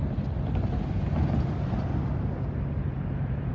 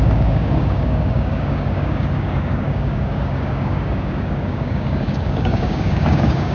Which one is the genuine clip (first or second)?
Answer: first